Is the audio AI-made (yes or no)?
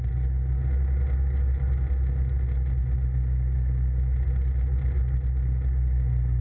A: no